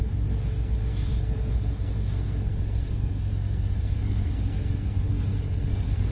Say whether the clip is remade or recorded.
remade